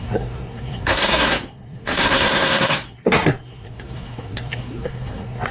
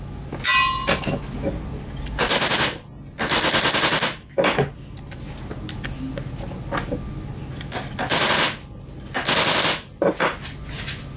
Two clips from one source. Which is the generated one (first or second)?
first